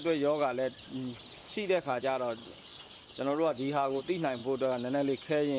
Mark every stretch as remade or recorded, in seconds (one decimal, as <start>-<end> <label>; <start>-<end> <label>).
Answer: 0.0-1.4 recorded; 1.4-2.0 remade; 2.0-2.4 recorded; 2.4-4.0 remade; 4.0-5.6 recorded